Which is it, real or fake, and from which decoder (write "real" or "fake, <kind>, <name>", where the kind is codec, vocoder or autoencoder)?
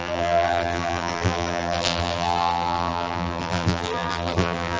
fake, vocoder, BigVGAN v2